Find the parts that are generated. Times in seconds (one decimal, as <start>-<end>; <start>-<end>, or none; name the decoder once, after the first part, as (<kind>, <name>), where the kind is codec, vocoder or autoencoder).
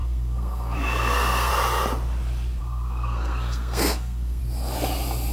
0.0-1.5 (codec, SNAC); 2.6-4.4